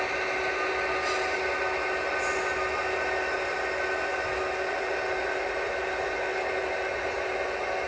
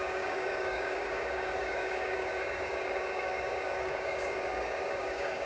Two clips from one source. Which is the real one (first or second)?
first